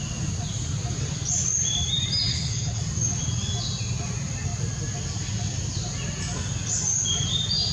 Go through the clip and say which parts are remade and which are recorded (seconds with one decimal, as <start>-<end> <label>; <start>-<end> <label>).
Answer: 0.0-2.3 recorded; 2.3-2.8 remade; 2.8-7.7 recorded